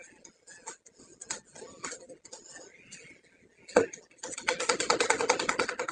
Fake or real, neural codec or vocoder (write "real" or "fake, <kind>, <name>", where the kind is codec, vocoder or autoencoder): real